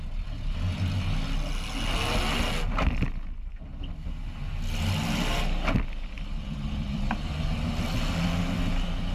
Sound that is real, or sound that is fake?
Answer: real